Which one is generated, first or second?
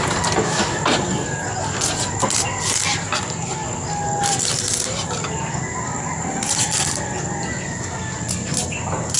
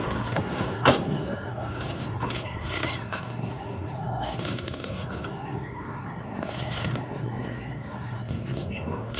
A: second